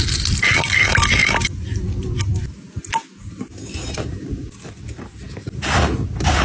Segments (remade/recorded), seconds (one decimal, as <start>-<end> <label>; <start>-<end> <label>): 0.0-6.4 recorded